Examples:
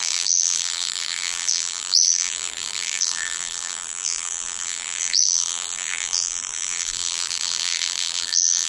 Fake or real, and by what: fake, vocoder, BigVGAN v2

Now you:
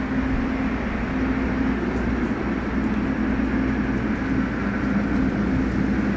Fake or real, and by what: real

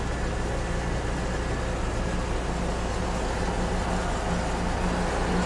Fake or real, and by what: real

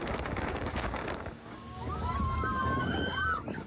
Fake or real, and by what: fake, codec, DAC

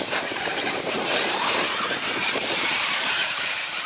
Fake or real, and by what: fake, vocoder, BigVGAN v2